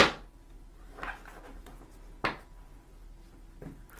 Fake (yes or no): no